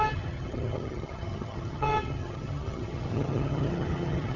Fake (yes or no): yes